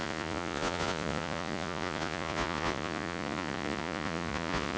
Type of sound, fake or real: fake